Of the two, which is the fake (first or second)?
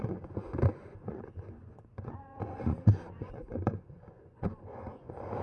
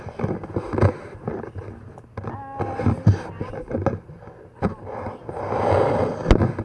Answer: first